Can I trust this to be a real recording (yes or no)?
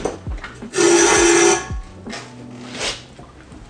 yes